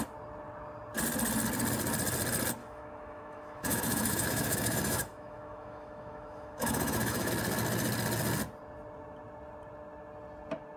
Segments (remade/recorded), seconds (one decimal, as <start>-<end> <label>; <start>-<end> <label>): 0.0-2.6 recorded; 2.6-7.3 remade; 7.3-10.8 recorded